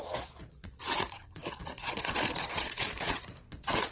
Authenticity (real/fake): fake